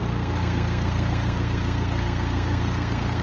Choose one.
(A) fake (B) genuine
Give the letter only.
A